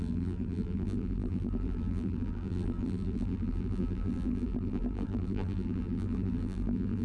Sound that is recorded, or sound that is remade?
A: remade